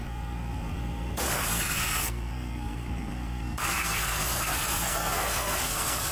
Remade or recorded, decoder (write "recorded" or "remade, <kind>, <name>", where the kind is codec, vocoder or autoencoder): remade, codec, SNAC